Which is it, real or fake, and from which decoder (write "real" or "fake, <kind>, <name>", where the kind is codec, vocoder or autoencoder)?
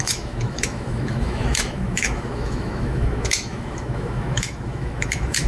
fake, autoencoder, DAC-VAE